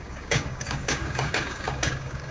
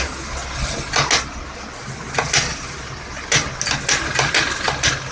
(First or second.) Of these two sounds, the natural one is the second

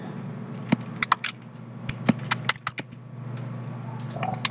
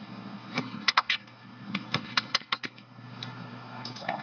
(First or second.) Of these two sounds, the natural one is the first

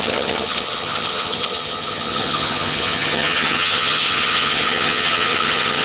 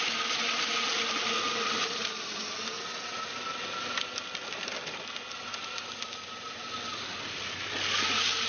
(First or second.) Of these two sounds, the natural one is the second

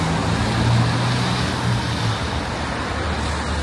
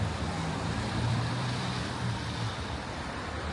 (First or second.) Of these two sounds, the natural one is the first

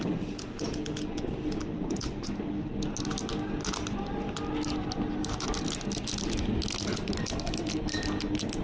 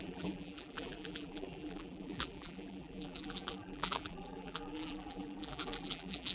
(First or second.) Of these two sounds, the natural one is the first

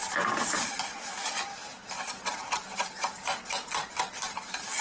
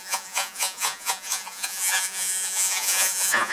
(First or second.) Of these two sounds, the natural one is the first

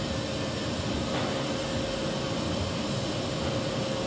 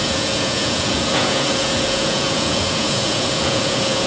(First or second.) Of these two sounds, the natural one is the first